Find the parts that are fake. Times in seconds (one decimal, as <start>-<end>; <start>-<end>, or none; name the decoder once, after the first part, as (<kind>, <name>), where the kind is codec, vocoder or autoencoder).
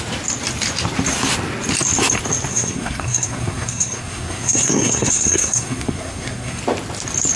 2.5-6.6 (codec, SNAC)